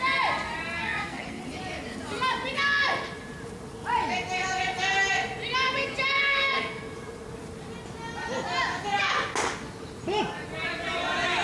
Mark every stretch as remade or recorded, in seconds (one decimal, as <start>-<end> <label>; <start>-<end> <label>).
0.0-0.8 recorded; 0.8-1.4 remade; 1.4-6.2 recorded; 6.2-6.9 remade; 6.9-11.4 recorded